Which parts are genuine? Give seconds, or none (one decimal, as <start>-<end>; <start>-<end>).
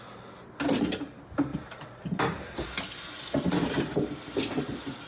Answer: 0.0-5.1